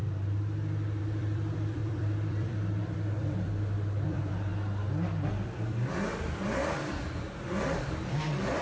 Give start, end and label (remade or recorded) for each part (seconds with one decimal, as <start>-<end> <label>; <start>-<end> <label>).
0.0-1.0 recorded; 1.0-4.5 remade; 4.5-5.3 recorded; 5.3-8.6 remade